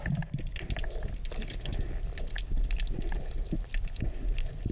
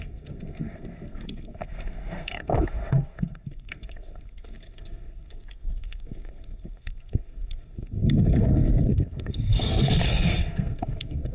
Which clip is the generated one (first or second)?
second